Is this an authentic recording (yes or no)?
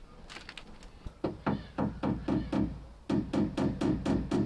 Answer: yes